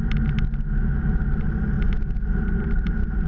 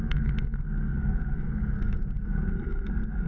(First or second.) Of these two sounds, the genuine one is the first